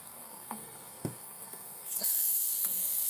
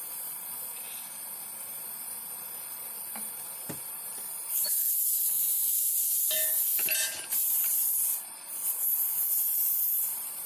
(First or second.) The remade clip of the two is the first